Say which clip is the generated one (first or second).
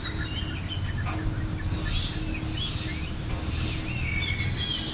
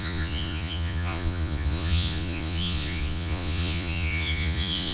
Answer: second